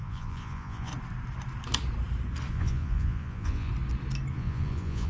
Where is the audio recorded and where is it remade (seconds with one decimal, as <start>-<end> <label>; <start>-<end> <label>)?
0.0-0.9 remade; 0.9-2.5 recorded; 2.5-3.7 remade; 3.7-4.3 recorded; 4.3-5.1 remade